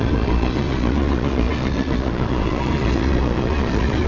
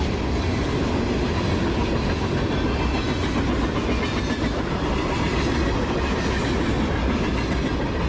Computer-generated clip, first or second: first